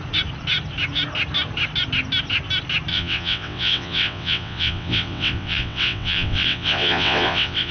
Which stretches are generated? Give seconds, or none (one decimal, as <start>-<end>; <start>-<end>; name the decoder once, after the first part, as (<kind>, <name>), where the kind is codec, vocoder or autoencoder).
2.9-7.7 (vocoder, WaveNeXt)